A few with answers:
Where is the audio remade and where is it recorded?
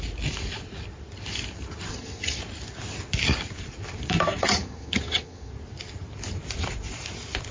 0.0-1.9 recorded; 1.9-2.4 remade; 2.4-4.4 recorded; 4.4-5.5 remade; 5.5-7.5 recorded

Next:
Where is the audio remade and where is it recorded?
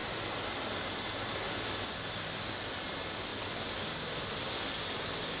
0.0-5.4 recorded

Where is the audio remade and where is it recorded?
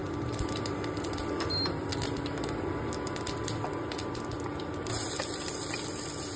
0.0-6.4 recorded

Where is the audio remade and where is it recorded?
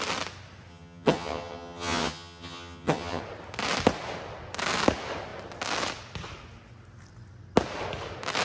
0.0-0.7 recorded; 0.7-3.2 remade; 3.2-8.4 recorded